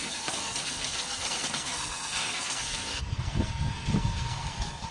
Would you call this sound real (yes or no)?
no